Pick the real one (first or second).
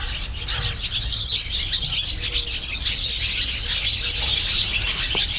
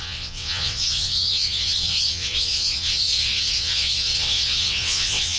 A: first